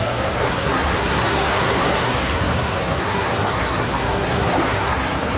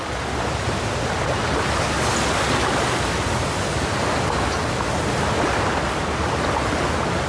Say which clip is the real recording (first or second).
second